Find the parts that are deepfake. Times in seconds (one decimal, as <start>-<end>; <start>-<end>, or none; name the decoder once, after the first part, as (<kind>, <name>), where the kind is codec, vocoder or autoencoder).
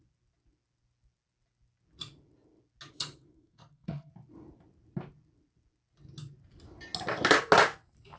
2.9-4.1 (codec, SNAC)